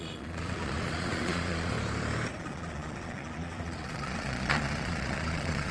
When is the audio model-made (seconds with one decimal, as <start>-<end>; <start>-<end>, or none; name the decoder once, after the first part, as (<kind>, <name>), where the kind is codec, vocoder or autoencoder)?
0.0-1.7 (vocoder, Vocos); 2.4-5.7